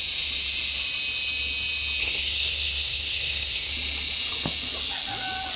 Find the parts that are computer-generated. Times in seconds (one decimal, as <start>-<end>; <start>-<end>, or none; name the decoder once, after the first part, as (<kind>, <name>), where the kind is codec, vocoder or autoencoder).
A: 2.0-3.7 (codec, SNAC)